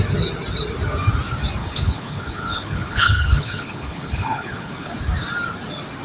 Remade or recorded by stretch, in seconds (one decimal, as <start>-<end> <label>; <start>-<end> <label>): 0.0-1.6 recorded; 1.6-4.9 remade; 4.9-6.0 recorded

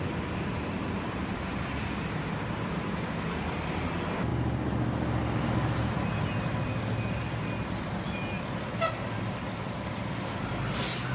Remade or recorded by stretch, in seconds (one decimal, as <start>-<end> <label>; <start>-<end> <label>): 0.0-11.1 recorded

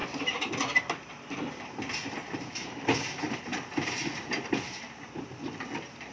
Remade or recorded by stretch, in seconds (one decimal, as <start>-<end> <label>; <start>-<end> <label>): 0.0-6.1 recorded